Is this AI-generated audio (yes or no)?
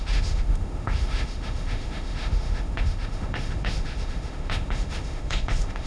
yes